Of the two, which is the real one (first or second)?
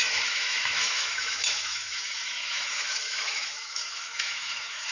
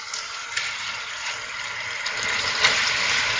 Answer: second